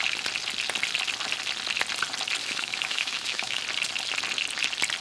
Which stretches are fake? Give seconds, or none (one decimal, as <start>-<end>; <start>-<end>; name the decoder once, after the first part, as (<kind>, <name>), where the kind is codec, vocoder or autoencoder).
2.4-3.6 (autoencoder, DAC-VAE)